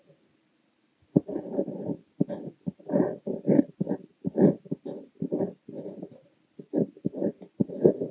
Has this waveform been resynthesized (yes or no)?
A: no